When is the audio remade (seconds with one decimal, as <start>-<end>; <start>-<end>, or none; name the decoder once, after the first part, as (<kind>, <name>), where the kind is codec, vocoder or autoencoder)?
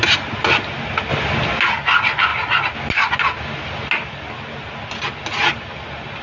none